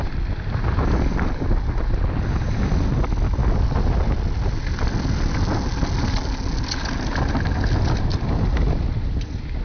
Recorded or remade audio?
recorded